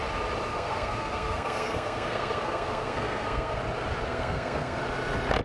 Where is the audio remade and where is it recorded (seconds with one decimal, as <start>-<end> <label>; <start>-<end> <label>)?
0.0-0.5 recorded; 0.5-3.6 remade; 3.6-4.1 recorded; 4.1-4.8 remade; 4.8-5.4 recorded